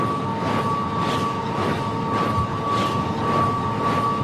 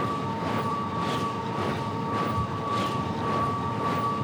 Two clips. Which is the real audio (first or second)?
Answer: first